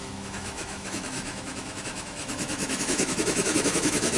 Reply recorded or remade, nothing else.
remade